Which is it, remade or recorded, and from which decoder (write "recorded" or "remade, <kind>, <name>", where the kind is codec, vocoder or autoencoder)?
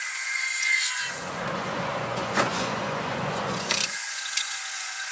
remade, vocoder, Vocos